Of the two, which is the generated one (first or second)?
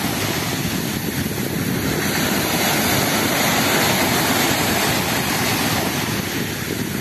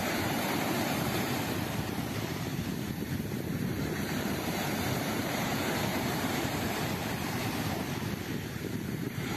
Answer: second